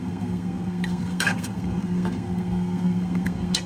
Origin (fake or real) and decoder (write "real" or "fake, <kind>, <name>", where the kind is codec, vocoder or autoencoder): fake, codec, SNAC